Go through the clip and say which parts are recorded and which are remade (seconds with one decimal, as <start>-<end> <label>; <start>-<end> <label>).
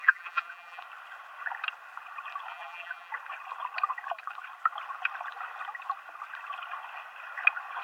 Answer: 0.0-0.8 remade; 0.8-2.5 recorded; 2.5-3.1 remade; 3.1-7.8 recorded